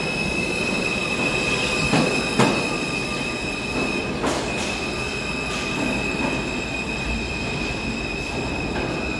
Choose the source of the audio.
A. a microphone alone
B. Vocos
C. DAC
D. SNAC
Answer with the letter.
A